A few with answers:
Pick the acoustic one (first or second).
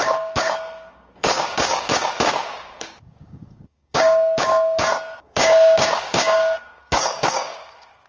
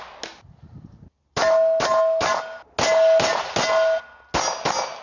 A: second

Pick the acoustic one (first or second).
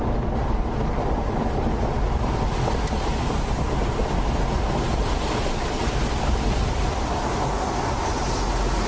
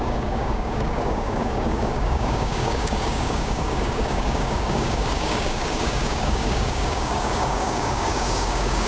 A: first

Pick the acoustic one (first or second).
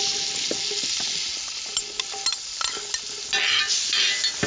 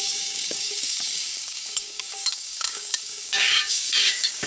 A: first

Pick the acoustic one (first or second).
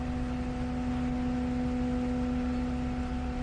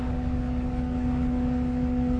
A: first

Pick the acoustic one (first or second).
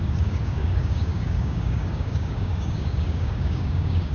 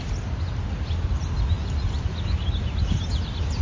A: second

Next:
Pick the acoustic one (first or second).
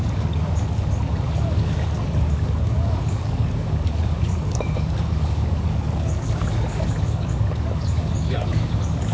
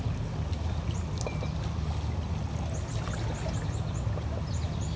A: second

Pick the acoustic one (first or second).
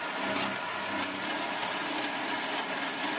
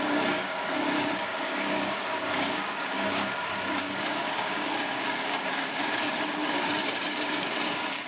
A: first